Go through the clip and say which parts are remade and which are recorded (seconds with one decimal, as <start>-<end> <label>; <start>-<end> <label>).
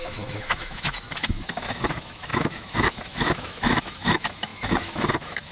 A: 0.0-5.5 remade